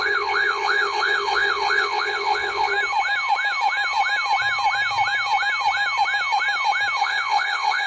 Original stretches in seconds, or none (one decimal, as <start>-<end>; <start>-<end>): 2.7-7.0